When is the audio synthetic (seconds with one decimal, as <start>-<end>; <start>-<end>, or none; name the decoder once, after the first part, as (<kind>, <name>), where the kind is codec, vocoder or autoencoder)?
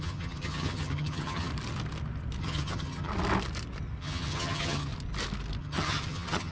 0.0-1.5 (vocoder, HiFi-GAN); 2.4-3.1; 4.0-4.9; 5.6-6.5